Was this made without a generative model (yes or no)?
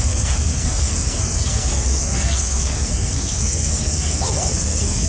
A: no